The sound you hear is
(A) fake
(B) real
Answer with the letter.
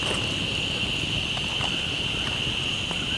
B